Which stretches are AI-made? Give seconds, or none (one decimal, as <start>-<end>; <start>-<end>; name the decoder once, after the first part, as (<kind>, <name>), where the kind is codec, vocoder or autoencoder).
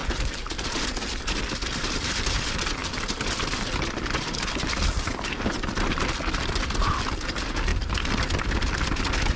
none